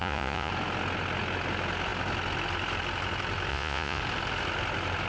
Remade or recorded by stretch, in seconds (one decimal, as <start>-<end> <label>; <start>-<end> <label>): 0.0-0.5 remade; 0.5-3.5 recorded; 3.5-4.0 remade; 4.0-5.1 recorded